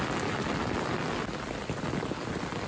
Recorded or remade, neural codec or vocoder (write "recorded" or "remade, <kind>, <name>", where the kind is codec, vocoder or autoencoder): recorded